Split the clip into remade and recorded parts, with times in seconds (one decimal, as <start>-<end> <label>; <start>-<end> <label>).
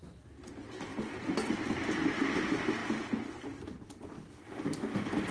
0.0-5.3 recorded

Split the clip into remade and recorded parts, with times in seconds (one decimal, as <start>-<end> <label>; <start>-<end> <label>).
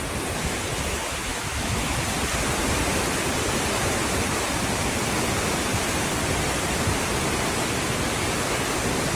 0.0-1.3 recorded; 1.3-2.0 remade; 2.0-9.2 recorded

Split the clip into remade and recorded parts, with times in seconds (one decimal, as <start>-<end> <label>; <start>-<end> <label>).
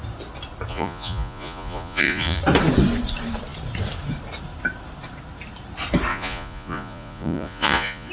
0.0-0.7 recorded; 0.7-2.4 remade; 2.4-6.1 recorded; 6.1-8.1 remade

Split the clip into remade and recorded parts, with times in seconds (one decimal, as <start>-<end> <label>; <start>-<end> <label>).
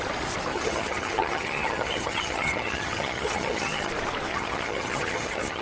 0.0-0.5 recorded; 0.5-3.9 remade; 3.9-4.3 recorded; 4.3-5.6 remade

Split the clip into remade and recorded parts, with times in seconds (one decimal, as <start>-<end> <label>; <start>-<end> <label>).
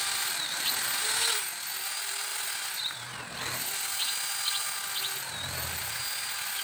0.0-6.6 recorded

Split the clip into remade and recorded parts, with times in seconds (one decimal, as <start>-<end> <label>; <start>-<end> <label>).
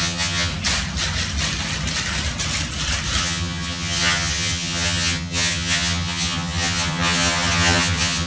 0.0-0.5 remade; 0.5-3.2 recorded; 3.2-8.3 remade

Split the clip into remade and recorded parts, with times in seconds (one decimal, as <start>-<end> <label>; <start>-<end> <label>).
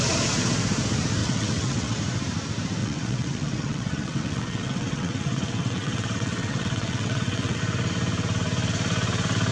0.0-1.2 recorded; 1.2-2.0 remade; 2.0-2.8 recorded; 2.8-7.6 remade; 7.6-9.5 recorded